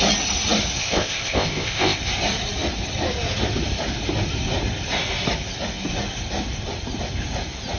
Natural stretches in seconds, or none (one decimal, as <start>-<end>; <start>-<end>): 0.0-0.8; 2.0-7.8